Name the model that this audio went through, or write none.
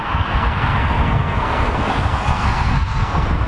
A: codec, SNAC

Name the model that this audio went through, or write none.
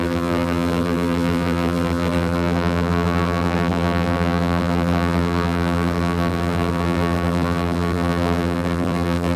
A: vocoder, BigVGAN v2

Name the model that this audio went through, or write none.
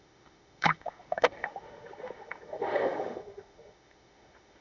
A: autoencoder, DAC-VAE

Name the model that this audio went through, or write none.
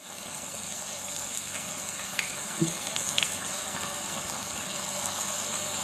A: codec, SNAC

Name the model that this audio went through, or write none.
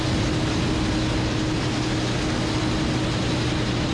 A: none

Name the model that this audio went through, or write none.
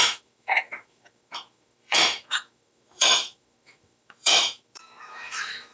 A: autoencoder, DAC-VAE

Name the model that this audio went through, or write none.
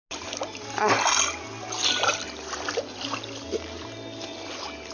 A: none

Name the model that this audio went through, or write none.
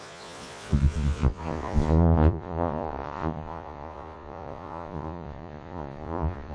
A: vocoder, Vocos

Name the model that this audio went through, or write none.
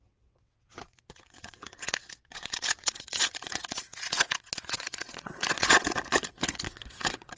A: vocoder, WaveNeXt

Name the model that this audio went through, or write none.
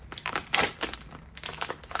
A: none